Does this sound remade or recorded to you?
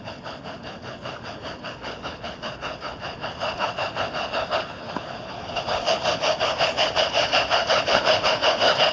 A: remade